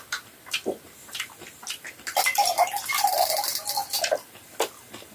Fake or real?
real